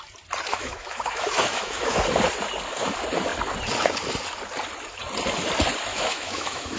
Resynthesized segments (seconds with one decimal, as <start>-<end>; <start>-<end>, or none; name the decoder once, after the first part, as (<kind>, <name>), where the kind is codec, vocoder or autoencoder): 0.5-2.0 (autoencoder, DAC-VAE); 5.9-6.8